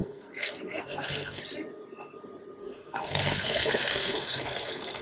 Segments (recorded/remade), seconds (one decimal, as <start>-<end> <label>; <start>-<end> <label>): 0.0-1.4 remade; 1.4-2.6 recorded; 2.6-5.0 remade